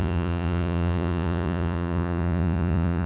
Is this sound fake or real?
fake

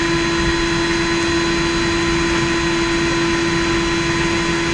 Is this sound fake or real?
real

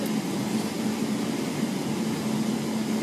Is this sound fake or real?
real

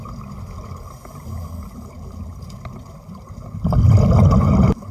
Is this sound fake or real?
real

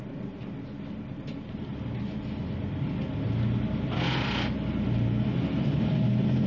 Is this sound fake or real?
real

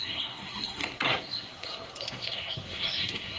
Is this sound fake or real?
fake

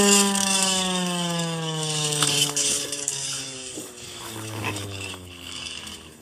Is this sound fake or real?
fake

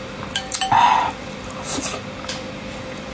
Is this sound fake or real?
real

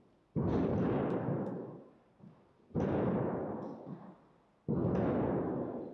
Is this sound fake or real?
real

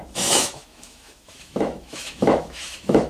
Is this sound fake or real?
fake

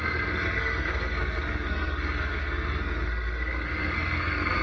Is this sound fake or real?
fake